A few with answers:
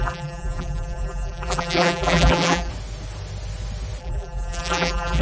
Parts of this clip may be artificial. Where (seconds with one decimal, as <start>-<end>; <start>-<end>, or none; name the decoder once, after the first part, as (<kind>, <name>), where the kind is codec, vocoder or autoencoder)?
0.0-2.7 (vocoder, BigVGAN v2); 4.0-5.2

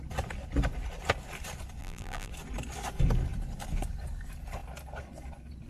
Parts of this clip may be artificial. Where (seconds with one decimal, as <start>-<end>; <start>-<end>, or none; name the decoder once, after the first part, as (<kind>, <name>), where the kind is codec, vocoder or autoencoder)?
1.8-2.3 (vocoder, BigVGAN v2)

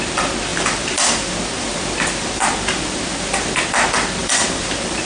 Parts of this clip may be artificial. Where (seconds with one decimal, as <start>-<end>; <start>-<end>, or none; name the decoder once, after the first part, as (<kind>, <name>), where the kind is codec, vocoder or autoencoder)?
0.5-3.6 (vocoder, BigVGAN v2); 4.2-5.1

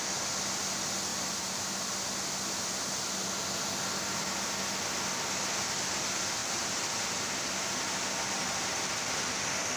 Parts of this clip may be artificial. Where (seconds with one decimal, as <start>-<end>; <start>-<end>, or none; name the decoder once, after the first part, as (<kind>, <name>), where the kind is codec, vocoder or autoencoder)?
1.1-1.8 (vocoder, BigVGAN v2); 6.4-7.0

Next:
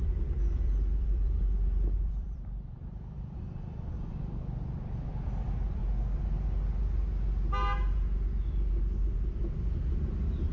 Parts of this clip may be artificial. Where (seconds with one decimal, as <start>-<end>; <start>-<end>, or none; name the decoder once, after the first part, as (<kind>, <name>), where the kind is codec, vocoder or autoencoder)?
0.0-5.8 (vocoder, BigVGAN v2); 9.9-10.5